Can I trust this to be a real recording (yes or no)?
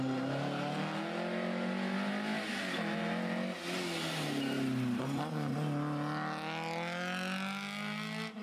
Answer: yes